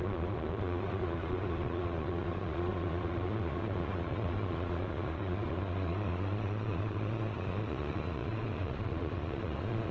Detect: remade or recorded remade